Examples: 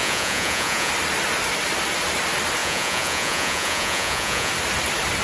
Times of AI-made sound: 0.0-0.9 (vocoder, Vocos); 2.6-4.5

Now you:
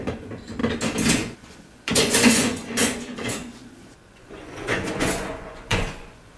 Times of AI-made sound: 0.0-0.6 (vocoder, Vocos); 1.1-6.4

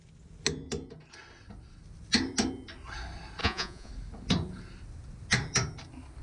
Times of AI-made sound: 3.4-3.9 (vocoder, Vocos)